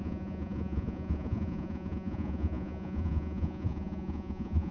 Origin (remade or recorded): remade